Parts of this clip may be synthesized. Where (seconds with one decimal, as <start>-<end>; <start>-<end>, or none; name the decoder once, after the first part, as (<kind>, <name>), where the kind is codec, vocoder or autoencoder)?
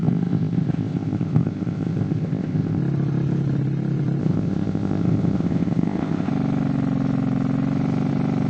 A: 0.0-2.8 (codec, ZipCodec); 4.2-6.3